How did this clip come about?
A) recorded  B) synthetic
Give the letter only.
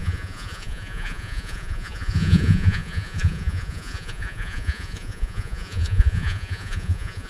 B